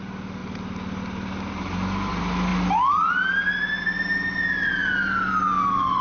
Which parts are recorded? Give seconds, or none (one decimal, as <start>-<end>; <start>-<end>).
0.0-6.0